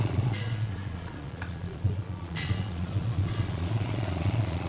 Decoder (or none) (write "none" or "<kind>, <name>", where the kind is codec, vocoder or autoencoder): vocoder, Vocos